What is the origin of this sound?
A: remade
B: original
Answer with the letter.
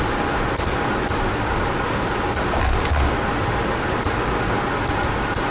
B